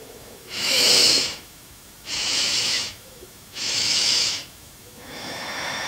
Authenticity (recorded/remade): remade